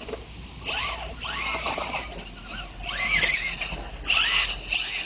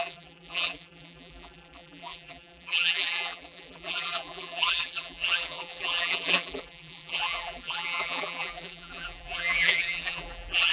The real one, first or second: first